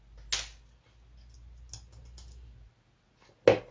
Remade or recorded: recorded